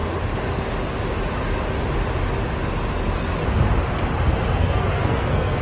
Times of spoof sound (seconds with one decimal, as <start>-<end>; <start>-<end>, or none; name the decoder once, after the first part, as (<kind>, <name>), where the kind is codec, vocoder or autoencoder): 4.6-5.6 (codec, SNAC)